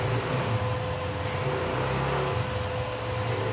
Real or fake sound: real